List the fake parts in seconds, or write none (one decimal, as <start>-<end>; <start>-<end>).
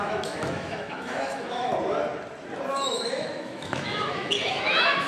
0.0-1.7; 2.7-5.1